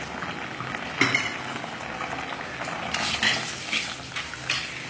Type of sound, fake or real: real